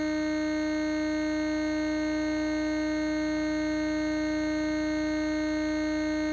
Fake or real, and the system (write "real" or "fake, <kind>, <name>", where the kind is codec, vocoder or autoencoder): real